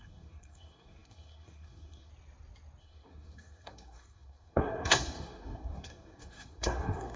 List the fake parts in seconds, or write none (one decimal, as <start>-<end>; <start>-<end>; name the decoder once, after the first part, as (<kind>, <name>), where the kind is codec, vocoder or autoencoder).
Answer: 0.0-2.1 (codec, SNAC); 2.8-7.2